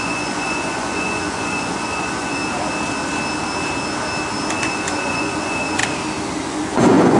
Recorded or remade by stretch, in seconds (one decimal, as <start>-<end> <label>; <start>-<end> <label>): 0.0-2.4 remade; 2.4-4.5 recorded; 4.5-5.8 remade; 5.8-6.5 recorded; 6.5-7.2 remade